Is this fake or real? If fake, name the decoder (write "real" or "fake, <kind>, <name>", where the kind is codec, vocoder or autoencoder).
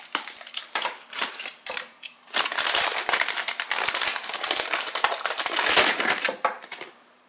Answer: fake, vocoder, BigVGAN v2